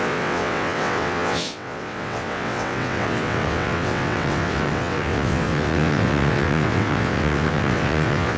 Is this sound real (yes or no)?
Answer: no